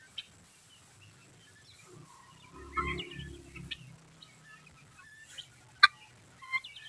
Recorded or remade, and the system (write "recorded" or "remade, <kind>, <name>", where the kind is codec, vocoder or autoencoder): recorded